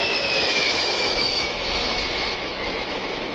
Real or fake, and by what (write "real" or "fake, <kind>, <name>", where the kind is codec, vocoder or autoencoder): fake, autoencoder, DAC-VAE